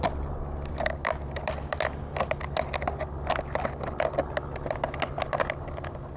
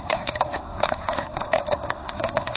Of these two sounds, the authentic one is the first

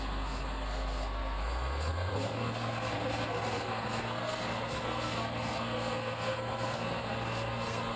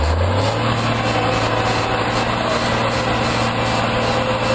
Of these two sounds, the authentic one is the second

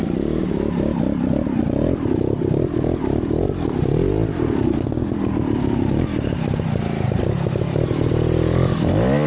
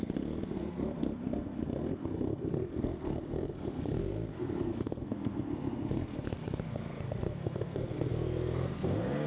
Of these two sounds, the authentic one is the first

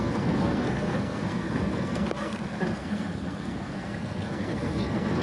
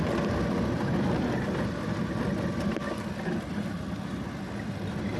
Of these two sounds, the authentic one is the second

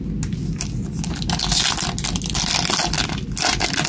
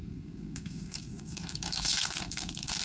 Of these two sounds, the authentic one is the first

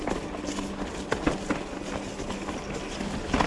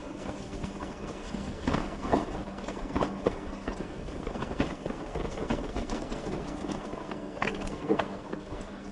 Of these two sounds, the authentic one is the first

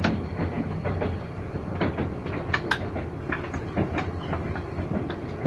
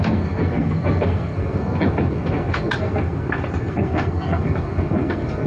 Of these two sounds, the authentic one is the first